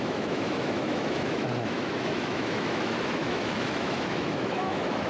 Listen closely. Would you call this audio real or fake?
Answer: fake